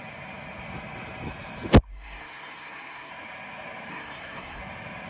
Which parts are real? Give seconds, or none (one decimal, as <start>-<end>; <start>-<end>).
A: 0.0-1.9; 3.1-3.9; 4.6-5.1